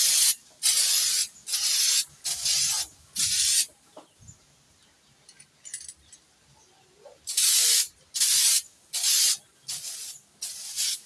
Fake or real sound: real